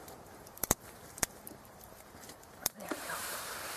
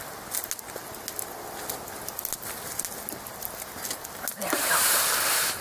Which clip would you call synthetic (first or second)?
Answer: first